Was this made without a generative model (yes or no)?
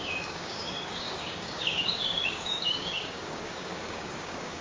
no